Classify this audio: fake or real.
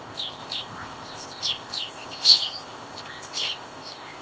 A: fake